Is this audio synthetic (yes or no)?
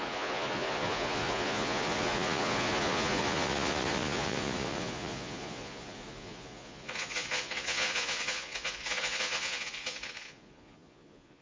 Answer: yes